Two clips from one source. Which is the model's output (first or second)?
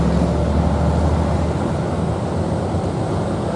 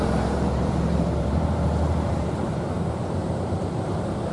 second